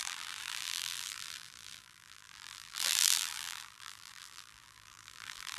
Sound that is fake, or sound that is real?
fake